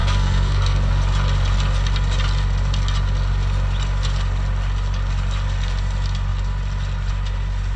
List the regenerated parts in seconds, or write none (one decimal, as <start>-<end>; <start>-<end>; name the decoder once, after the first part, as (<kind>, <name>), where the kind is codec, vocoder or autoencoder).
0.0-0.9 (codec, SNAC)